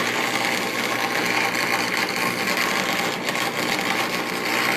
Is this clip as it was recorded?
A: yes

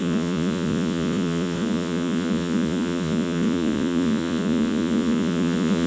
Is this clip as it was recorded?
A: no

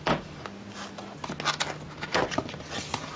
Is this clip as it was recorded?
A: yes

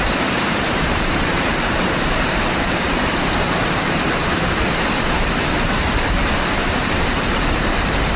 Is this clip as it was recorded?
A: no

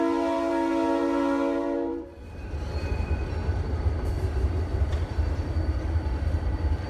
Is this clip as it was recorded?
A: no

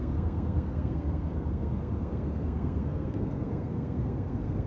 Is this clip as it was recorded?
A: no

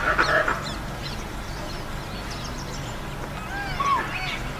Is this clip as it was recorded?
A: yes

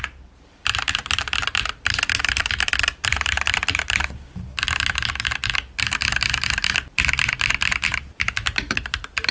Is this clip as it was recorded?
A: no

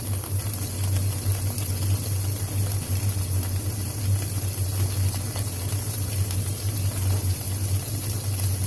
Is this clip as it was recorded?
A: yes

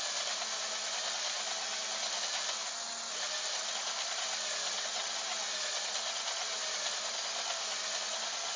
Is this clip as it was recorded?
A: yes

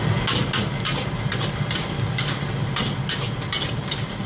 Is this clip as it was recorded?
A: yes